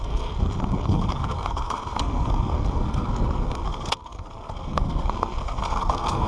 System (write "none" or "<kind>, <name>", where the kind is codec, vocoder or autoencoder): codec, SNAC